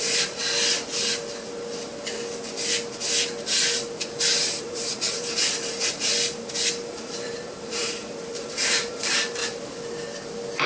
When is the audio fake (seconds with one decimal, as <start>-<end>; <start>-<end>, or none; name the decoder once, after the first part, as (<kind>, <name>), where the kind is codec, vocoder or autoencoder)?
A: 0.0-0.4 (vocoder, BigVGAN v2); 4.6-6.1; 6.9-9.4